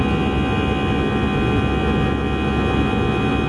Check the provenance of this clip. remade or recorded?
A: recorded